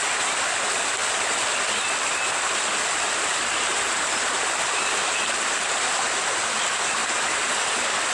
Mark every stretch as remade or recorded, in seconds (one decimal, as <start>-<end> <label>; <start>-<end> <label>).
0.0-8.1 recorded